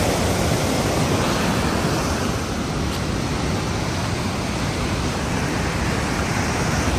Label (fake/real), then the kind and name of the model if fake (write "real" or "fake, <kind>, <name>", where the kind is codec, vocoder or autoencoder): real